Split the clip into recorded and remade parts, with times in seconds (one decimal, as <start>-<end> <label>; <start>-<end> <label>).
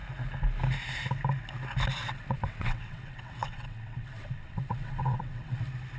0.0-2.0 recorded; 2.0-5.6 remade; 5.6-6.0 recorded